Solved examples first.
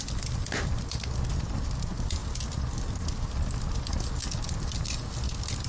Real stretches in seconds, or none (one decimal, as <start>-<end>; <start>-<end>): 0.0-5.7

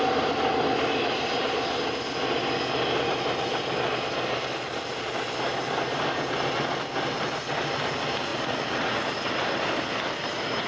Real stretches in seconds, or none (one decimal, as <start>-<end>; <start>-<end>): 0.0-8.3; 9.0-10.7

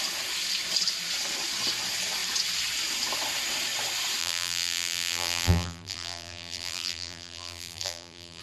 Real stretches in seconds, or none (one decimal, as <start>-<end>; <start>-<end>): 0.0-4.2